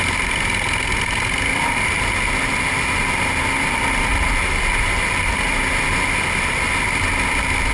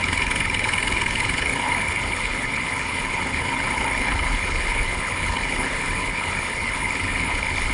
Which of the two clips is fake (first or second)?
second